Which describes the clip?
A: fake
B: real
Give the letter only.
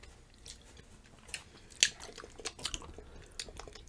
B